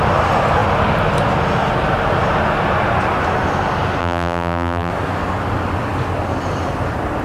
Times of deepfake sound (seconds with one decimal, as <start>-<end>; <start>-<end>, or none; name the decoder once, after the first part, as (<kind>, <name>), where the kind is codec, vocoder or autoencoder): 4.0-4.9 (vocoder, BigVGAN v2)